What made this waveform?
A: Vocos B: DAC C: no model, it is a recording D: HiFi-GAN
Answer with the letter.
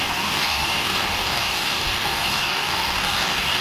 B